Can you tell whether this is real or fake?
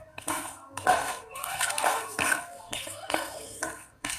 fake